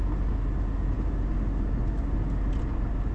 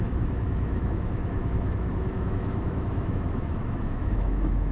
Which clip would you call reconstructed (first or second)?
second